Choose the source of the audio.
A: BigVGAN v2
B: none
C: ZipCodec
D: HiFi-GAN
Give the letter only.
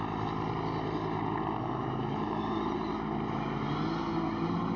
B